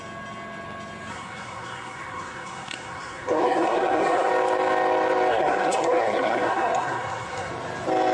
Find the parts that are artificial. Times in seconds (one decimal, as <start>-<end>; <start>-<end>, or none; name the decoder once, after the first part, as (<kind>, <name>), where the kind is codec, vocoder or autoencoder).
1.1-4.3 (codec, SNAC); 5.3-7.5